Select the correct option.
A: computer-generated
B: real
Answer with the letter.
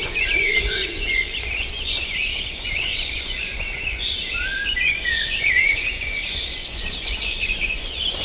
A